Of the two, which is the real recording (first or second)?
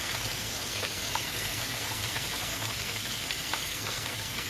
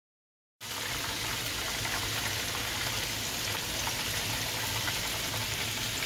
second